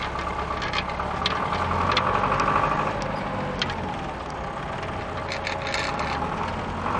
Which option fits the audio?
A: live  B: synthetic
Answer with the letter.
A